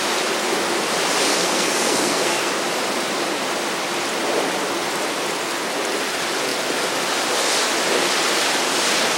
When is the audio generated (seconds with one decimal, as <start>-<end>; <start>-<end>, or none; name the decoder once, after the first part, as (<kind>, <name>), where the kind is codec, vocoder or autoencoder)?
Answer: 1.3-2.5 (codec, SNAC)